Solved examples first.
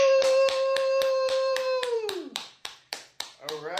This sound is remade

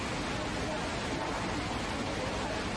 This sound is recorded